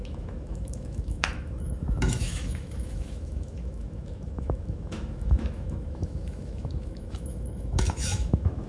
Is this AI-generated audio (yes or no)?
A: yes